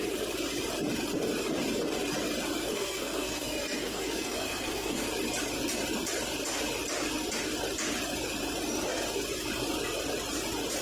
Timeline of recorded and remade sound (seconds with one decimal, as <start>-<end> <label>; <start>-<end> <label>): 0.0-2.6 recorded; 2.6-5.1 remade; 5.1-10.8 recorded